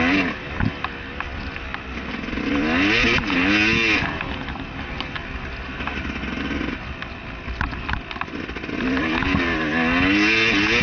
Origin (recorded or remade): recorded